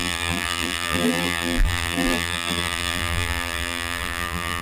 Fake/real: fake